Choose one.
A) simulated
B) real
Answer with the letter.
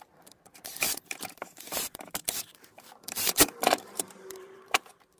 A